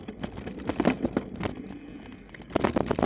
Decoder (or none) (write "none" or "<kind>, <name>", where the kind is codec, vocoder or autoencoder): none